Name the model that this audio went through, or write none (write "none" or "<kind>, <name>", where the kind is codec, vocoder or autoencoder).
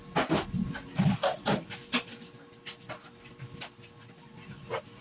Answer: none